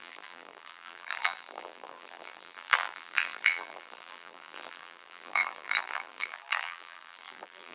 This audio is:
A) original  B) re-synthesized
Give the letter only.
B